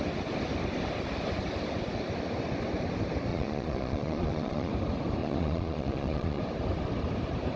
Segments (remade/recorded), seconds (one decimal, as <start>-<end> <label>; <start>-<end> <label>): 0.0-3.3 recorded; 3.3-4.7 remade; 4.7-5.2 recorded; 5.2-6.4 remade; 6.4-7.6 recorded

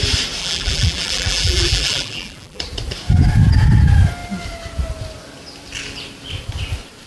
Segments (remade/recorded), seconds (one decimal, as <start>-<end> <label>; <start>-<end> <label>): 0.0-0.4 recorded; 0.4-2.6 remade; 2.6-7.1 recorded

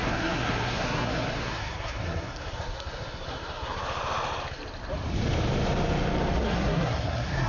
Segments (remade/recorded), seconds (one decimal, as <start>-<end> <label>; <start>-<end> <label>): 0.0-3.8 remade; 3.8-6.4 recorded; 6.4-7.5 remade

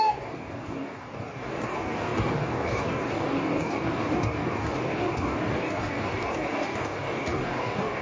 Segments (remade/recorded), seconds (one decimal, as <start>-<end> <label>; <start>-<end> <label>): 0.0-8.0 remade

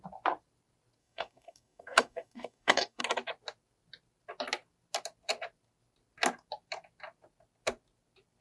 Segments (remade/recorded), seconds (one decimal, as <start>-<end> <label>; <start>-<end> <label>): 0.0-1.0 recorded; 1.0-3.0 remade; 3.0-8.4 recorded

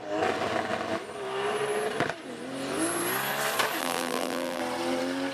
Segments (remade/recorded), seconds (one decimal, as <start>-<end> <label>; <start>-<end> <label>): 0.0-3.8 recorded; 3.8-4.6 remade; 4.6-5.3 recorded